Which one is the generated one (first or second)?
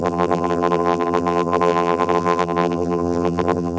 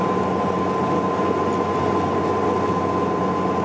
first